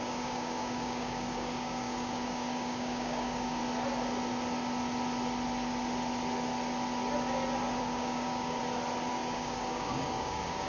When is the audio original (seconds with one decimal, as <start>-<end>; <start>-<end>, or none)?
3.6-7.8; 8.6-9.1